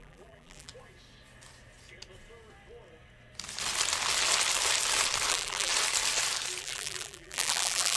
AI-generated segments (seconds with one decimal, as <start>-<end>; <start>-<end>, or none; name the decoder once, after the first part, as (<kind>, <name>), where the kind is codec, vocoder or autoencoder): 0.0-0.7 (vocoder, BigVGAN v2); 5.3-5.7; 6.6-8.0